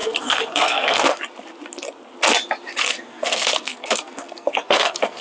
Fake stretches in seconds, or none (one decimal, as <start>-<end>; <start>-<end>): 0.0-1.2; 2.8-5.2